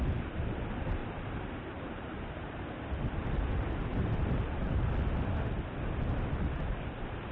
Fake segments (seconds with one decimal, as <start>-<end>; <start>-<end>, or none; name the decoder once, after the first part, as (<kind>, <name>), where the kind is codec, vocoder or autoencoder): 1.0-3.4 (vocoder, BigVGAN v2); 3.9-5.3